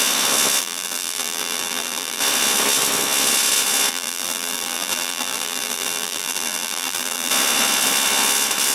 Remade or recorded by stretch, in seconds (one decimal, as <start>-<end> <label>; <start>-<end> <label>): 0.0-0.6 recorded; 0.6-2.2 remade; 2.2-3.9 recorded; 3.9-7.3 remade; 7.3-8.7 recorded